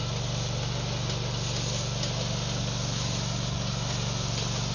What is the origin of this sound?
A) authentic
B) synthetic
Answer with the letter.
A